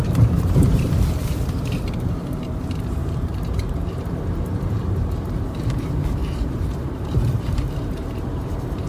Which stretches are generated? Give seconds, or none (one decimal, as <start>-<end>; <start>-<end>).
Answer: 0.0-8.9